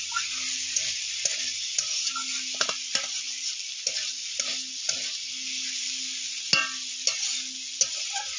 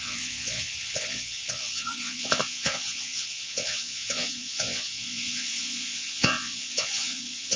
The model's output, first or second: second